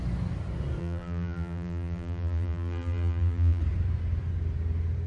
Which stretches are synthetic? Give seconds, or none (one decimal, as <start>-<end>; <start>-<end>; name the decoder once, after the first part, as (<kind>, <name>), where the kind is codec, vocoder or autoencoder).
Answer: 0.8-3.6 (vocoder, BigVGAN v2)